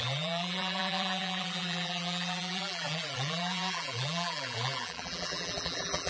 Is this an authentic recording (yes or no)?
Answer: no